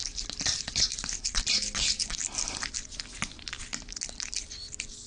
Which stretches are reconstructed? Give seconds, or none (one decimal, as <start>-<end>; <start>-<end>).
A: 2.2-3.6